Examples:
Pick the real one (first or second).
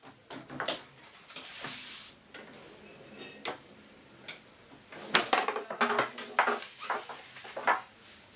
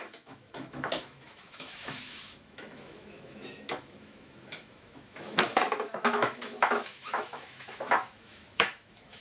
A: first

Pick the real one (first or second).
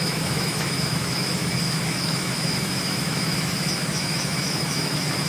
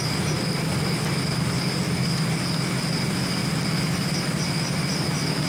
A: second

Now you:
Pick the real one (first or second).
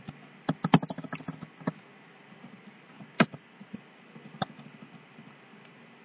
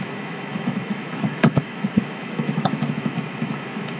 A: first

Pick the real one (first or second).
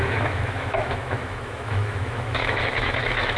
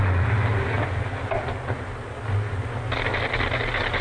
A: second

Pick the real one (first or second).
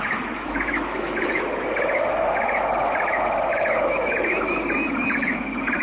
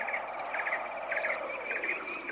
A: second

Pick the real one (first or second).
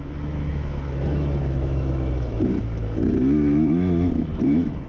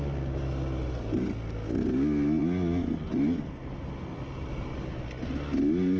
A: second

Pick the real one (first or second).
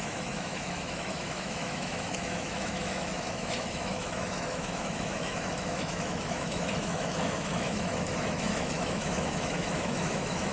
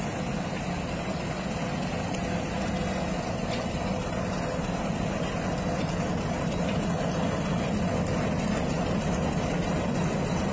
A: second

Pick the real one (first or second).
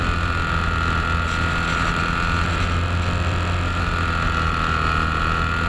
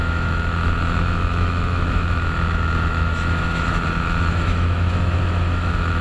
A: first